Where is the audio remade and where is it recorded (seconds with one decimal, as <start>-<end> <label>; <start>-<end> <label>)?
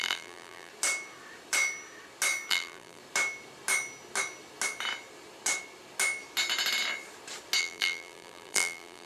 0.0-0.7 remade; 0.7-2.5 recorded; 2.5-3.0 remade; 3.0-7.6 recorded; 7.6-9.1 remade